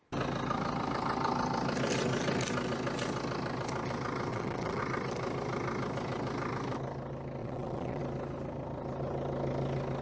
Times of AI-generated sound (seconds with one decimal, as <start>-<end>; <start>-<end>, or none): 4.3-4.8; 7.4-8.0